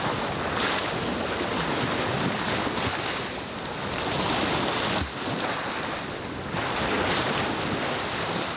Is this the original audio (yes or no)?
yes